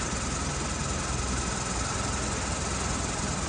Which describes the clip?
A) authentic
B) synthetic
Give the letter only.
A